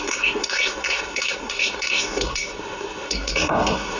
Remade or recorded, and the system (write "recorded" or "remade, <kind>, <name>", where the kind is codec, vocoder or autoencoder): remade, codec, SNAC